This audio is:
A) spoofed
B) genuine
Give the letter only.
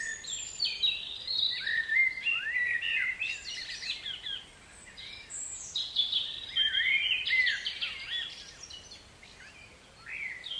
A